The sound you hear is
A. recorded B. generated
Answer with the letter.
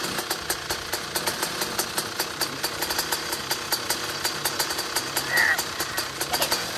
A